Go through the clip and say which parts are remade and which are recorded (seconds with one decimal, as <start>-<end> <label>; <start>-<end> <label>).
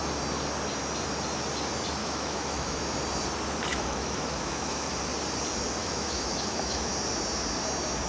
0.0-2.0 recorded; 2.0-2.8 remade; 2.8-3.7 recorded; 3.7-4.9 remade; 4.9-5.8 recorded; 5.8-6.9 remade; 6.9-8.1 recorded